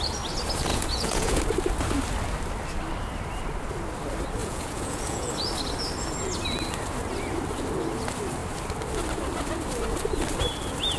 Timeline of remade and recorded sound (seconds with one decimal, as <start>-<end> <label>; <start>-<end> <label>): 0.0-0.7 recorded; 0.7-1.4 remade; 1.4-4.4 recorded; 4.4-5.3 remade; 5.3-11.0 recorded